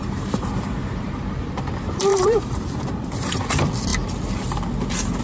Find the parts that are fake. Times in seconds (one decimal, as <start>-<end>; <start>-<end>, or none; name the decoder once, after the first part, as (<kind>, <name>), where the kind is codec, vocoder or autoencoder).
0.0-1.3 (vocoder, BigVGAN v2); 2.1-3.4